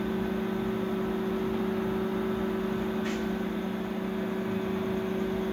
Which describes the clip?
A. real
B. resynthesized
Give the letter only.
A